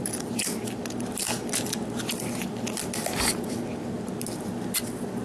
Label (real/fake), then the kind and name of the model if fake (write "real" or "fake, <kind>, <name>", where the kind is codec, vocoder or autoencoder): real